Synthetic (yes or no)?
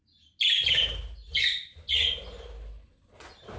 no